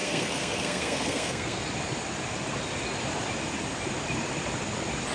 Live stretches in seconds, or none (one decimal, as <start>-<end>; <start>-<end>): 1.6-5.1